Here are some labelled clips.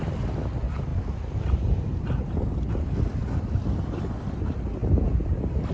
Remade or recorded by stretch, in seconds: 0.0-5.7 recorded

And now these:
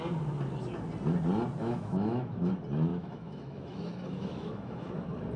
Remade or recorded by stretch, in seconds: 0.0-1.6 recorded; 1.6-2.5 remade; 2.5-2.9 recorded; 2.9-4.9 remade; 4.9-5.4 recorded

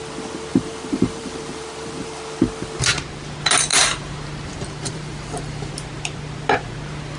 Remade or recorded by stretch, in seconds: 0.0-0.5 recorded; 0.5-2.1 remade; 2.1-3.7 recorded; 3.7-5.7 remade; 5.7-7.2 recorded